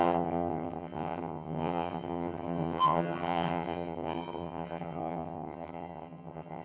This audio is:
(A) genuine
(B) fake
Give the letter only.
B